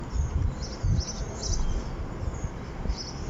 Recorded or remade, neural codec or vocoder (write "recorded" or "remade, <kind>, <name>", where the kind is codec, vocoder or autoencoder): recorded